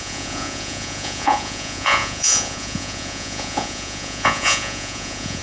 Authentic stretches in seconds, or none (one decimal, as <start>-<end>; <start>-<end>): none